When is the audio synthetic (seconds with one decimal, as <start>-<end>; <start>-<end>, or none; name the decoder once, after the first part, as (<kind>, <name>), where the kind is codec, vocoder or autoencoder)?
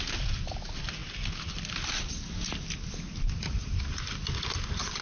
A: none